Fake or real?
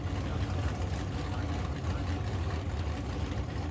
real